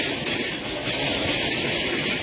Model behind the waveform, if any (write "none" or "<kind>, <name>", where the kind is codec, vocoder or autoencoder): none